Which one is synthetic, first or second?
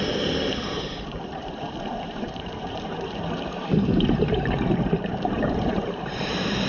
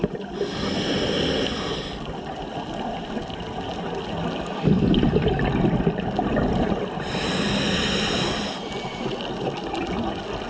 first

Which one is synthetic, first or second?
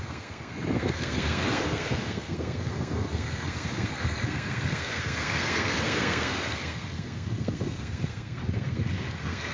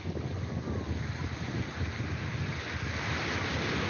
first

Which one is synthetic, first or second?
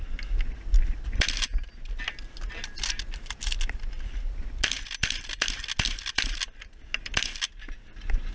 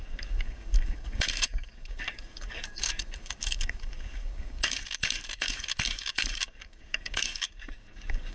second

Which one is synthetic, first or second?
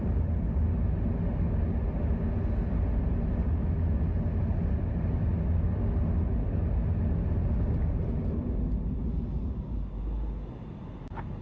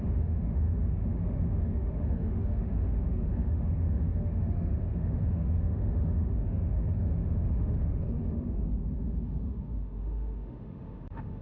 second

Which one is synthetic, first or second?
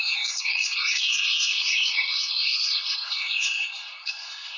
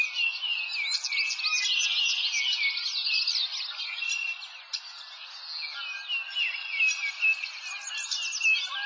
first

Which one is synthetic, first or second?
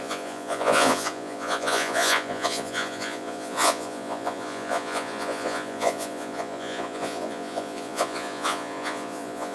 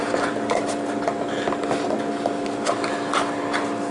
first